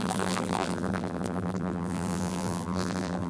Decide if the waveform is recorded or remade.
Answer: remade